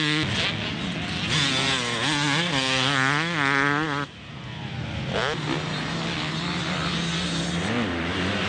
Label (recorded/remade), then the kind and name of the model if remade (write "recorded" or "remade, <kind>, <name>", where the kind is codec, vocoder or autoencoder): recorded